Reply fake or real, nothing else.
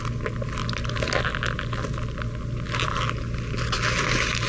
real